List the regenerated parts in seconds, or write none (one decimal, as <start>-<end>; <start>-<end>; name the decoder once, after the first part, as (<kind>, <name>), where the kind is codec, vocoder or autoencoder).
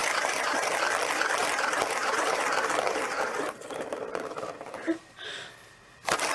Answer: 0.0-0.7 (vocoder, BigVGAN v2); 1.4-5.2